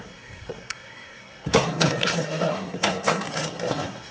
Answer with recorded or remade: remade